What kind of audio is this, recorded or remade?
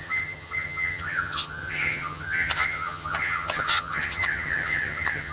remade